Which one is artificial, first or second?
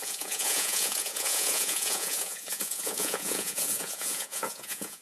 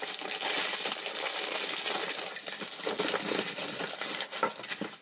first